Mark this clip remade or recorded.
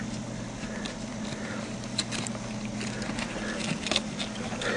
recorded